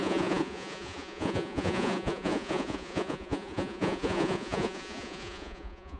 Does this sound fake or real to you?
fake